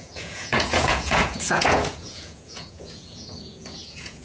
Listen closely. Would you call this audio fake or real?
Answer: fake